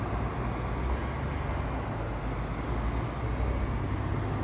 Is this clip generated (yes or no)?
no